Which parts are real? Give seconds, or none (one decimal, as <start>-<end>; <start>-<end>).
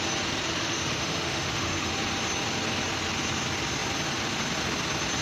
0.0-0.6; 1.9-5.2